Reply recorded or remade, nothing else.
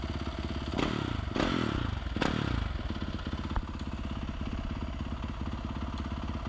recorded